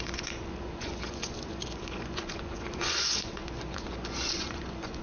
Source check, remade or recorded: remade